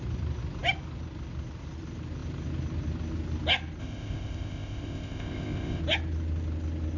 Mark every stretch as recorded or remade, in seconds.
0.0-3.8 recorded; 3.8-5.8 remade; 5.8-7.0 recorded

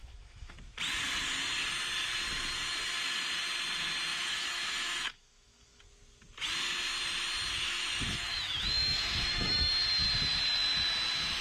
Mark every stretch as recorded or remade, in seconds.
0.0-0.5 remade; 0.5-4.1 recorded; 4.1-5.8 remade; 5.8-7.5 recorded; 7.5-9.7 remade; 9.7-11.4 recorded

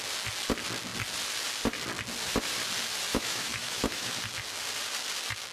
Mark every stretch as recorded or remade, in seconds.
0.0-3.1 recorded; 3.1-4.2 remade; 4.2-5.5 recorded

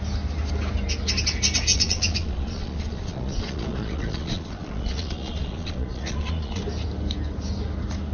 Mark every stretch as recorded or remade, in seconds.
0.0-1.7 recorded; 1.7-6.6 remade; 6.6-8.1 recorded

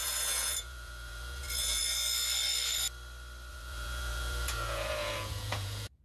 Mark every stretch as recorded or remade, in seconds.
0.0-1.8 remade; 1.8-3.5 recorded; 3.5-6.0 remade

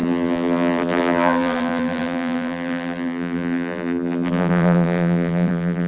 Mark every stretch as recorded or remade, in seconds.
0.0-5.9 remade

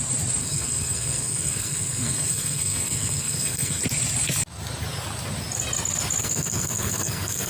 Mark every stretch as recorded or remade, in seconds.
0.0-0.4 recorded; 0.4-3.8 remade; 3.8-6.2 recorded; 6.2-7.5 remade